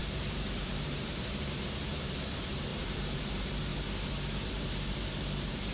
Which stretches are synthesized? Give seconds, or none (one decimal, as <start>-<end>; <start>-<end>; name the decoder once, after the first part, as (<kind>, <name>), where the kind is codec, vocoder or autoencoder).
0.0-3.7 (vocoder, BigVGAN v2); 4.5-5.7